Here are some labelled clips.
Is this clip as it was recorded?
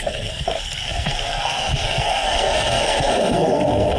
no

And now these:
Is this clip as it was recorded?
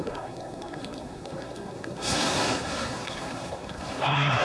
no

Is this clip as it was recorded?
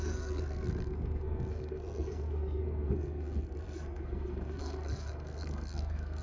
no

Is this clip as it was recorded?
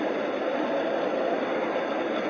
yes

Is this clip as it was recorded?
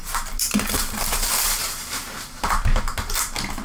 yes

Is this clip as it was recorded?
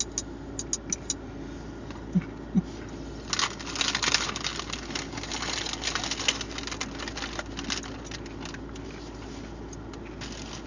yes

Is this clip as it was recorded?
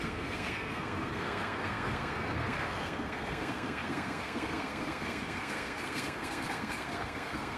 no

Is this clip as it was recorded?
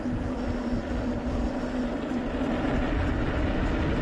yes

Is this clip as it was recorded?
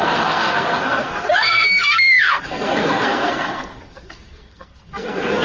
no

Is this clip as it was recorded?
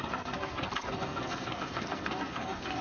no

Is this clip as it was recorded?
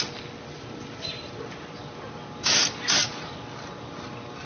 yes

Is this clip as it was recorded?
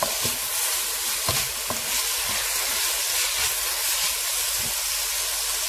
yes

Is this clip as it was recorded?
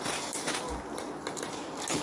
yes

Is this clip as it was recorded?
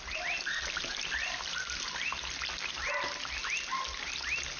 yes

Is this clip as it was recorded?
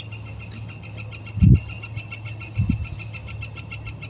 yes